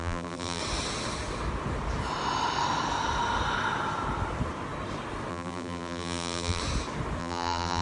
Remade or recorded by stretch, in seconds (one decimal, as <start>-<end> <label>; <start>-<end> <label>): 0.0-0.6 remade; 0.6-5.3 recorded; 5.3-6.6 remade; 6.6-7.2 recorded; 7.2-7.8 remade